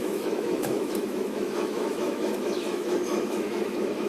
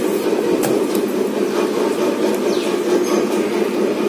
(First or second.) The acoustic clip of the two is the second